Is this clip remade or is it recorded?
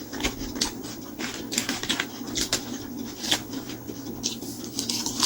recorded